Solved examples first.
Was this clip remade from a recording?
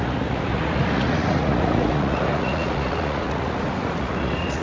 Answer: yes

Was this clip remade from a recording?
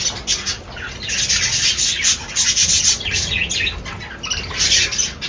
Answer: no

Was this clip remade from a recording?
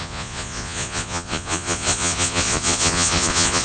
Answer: yes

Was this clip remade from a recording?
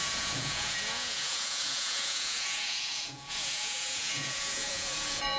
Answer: yes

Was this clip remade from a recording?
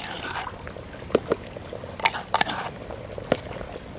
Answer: no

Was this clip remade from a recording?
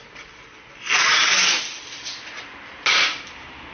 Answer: no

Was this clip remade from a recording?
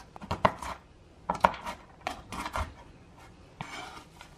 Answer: yes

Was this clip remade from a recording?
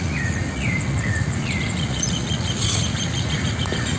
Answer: yes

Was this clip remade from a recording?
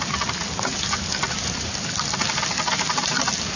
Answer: no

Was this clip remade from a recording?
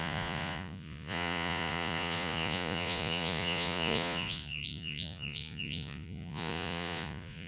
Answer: yes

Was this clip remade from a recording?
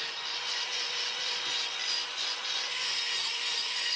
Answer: yes